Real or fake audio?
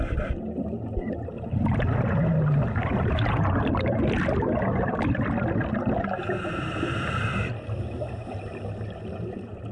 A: real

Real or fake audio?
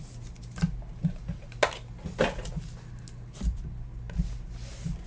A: real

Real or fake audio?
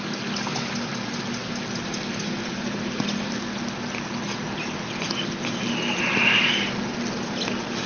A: real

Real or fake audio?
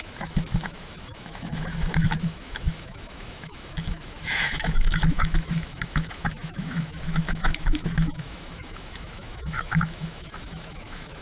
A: fake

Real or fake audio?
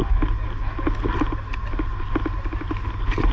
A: real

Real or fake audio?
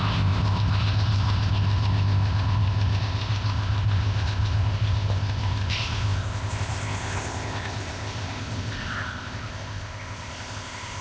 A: fake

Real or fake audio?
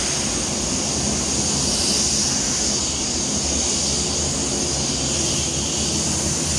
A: real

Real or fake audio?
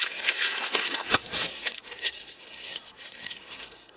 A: fake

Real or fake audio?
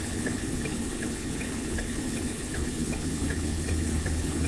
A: fake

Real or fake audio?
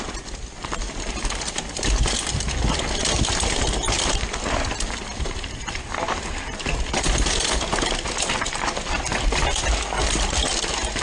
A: real